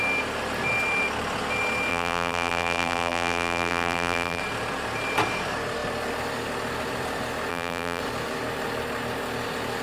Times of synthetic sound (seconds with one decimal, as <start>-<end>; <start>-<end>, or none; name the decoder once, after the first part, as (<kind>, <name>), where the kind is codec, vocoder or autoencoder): 1.9-4.4 (vocoder, BigVGAN v2); 7.5-8.0